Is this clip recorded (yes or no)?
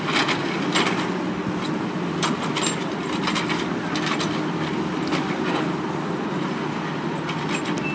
yes